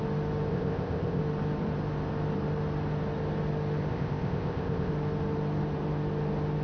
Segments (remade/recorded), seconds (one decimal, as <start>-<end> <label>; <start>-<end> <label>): 0.0-0.5 recorded; 0.5-1.2 remade; 1.2-3.9 recorded; 3.9-4.9 remade; 4.9-6.6 recorded